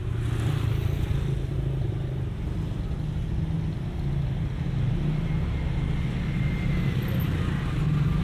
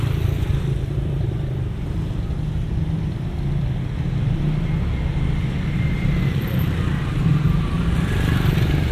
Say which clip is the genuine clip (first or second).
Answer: first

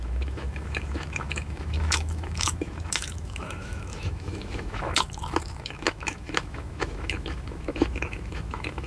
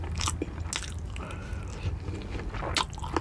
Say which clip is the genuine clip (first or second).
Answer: second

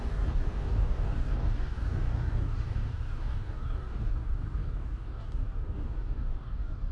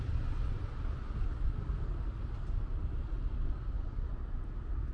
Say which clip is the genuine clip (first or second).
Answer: second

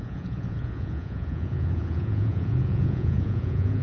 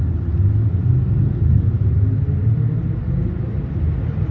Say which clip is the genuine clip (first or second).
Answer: second